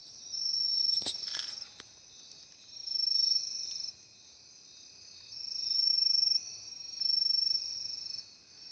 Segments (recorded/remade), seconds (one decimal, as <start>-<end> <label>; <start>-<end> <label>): 0.0-8.7 recorded